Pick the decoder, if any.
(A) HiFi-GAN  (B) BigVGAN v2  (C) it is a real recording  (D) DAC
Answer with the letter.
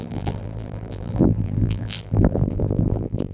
B